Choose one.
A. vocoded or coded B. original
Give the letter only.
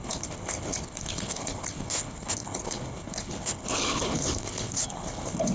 A